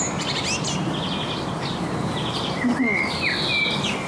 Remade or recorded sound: recorded